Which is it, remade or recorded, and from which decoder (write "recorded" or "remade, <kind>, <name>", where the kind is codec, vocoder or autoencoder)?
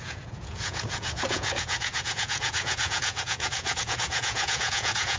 remade, vocoder, Vocos